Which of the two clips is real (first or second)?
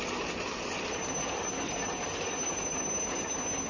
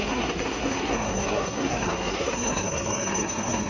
first